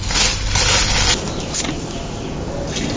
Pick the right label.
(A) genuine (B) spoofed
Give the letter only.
A